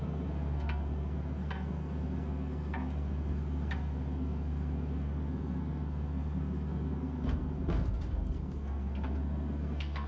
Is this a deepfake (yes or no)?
yes